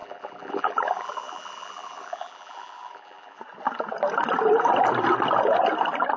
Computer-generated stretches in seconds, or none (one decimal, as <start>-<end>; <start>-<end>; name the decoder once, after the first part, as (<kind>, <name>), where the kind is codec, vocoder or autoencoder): 0.0-3.4 (vocoder, BigVGAN v2)